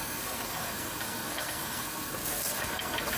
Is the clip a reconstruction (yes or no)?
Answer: yes